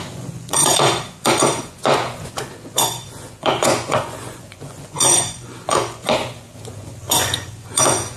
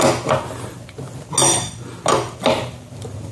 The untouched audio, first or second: second